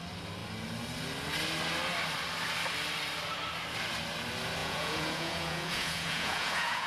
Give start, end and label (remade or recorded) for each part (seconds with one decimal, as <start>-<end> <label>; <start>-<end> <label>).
0.0-4.6 recorded; 4.6-6.9 remade